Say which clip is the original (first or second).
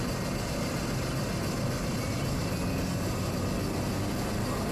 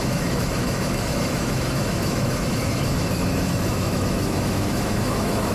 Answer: first